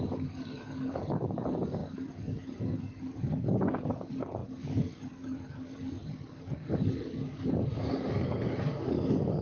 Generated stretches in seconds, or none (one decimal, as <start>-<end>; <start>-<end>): 0.0-9.4